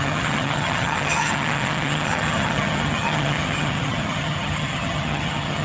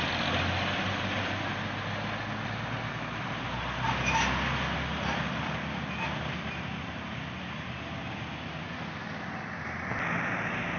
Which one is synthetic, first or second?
first